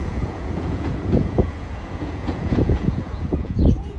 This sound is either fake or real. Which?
fake